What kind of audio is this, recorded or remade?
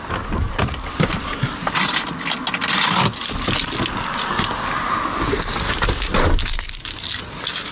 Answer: recorded